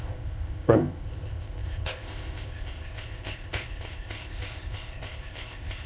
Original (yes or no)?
no